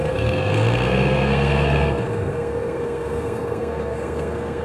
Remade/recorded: remade